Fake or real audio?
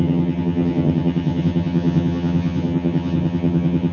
fake